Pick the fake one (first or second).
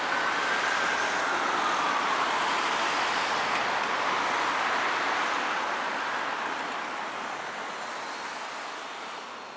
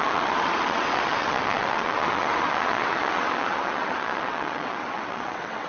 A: second